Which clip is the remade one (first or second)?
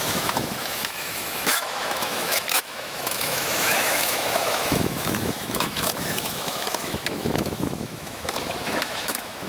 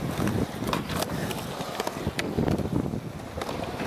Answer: first